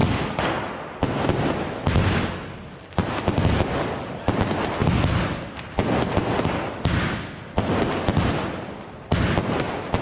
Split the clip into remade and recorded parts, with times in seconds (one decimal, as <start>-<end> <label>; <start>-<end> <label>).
0.0-10.0 recorded